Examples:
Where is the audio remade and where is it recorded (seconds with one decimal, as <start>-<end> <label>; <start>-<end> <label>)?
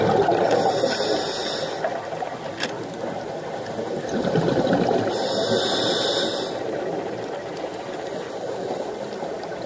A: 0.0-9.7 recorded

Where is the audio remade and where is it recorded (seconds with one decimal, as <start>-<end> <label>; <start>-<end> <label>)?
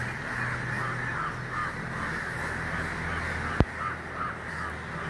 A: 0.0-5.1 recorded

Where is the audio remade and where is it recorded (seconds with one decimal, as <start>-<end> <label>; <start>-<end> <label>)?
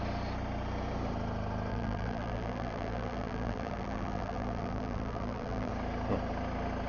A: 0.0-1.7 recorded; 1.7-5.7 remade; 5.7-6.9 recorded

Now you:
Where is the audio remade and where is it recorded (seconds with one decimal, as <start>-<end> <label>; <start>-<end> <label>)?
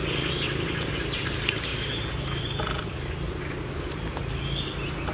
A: 0.0-5.1 recorded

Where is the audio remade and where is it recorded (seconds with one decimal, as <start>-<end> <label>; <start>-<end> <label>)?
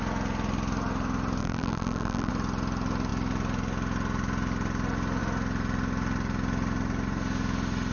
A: 0.0-1.4 recorded; 1.4-2.3 remade; 2.3-7.9 recorded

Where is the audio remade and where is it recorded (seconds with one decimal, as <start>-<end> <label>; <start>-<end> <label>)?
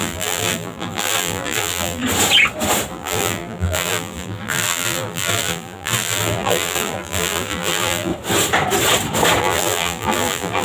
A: 0.0-2.0 remade; 2.0-2.9 recorded; 2.9-8.1 remade; 8.1-9.4 recorded; 9.4-10.6 remade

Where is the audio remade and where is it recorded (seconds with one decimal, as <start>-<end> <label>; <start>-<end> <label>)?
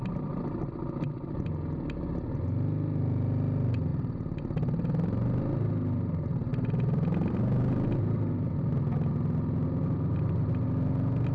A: 0.0-6.5 recorded; 6.5-8.7 remade; 8.7-11.3 recorded